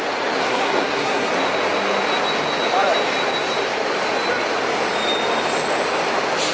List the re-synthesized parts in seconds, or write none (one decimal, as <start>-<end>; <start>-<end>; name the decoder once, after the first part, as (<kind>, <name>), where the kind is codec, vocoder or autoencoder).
0.4-1.3 (codec, SNAC)